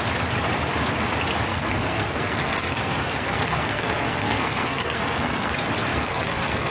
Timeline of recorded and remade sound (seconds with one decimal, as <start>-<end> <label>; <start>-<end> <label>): 0.0-1.5 recorded; 1.5-5.5 remade; 5.5-5.9 recorded; 5.9-6.7 remade